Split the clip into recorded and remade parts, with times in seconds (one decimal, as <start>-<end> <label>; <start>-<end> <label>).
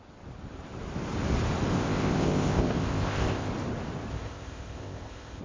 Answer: 0.0-1.7 recorded; 1.7-3.5 remade; 3.5-4.1 recorded; 4.1-5.4 remade